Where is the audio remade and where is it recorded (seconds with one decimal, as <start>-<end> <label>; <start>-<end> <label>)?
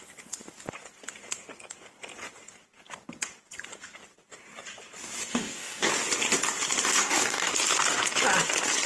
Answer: 0.0-5.3 recorded; 5.3-5.9 remade; 5.9-6.9 recorded; 6.9-7.5 remade; 7.5-8.9 recorded